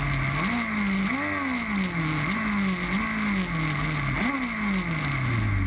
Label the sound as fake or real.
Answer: real